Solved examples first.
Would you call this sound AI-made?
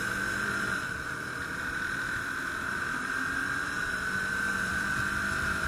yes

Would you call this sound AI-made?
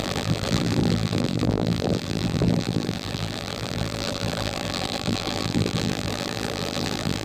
yes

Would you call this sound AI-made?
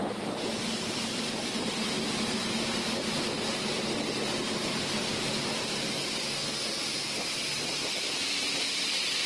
no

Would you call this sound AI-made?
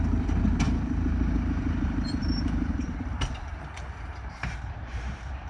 yes